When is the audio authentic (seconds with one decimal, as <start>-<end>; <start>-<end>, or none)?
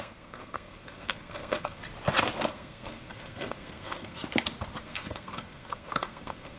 1.8-2.5; 4.2-4.8